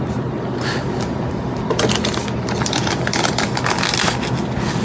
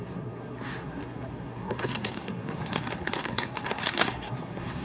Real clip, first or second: first